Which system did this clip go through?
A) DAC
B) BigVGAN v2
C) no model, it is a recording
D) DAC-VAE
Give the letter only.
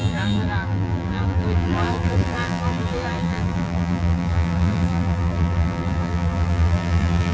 B